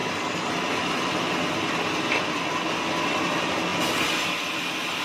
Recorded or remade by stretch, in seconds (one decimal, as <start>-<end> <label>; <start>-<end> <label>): 0.0-1.3 remade; 1.3-5.0 recorded